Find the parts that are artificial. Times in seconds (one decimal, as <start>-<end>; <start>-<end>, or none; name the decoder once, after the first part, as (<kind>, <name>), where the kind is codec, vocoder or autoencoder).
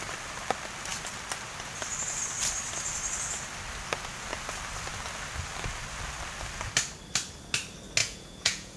8.0-8.8 (vocoder, Vocos)